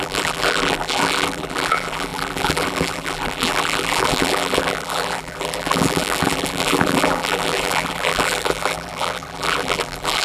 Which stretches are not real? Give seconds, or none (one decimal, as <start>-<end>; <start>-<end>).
0.0-10.2